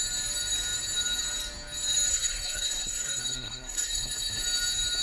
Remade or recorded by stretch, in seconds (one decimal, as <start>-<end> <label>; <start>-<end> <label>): 0.0-2.1 recorded; 2.1-4.4 remade; 4.4-5.0 recorded